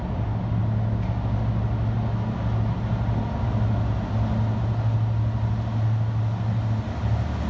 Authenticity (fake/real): real